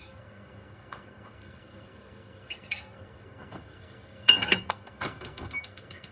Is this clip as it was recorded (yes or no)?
no